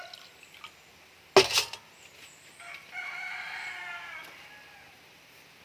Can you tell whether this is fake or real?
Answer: real